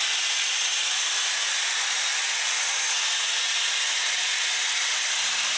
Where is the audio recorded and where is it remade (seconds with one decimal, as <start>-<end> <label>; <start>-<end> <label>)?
0.0-5.6 recorded